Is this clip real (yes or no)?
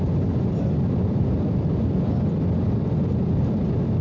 no